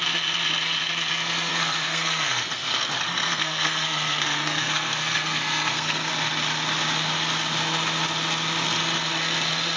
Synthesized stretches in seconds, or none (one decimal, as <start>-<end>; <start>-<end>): 1.5-6.1